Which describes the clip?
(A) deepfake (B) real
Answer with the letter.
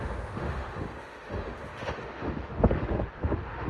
A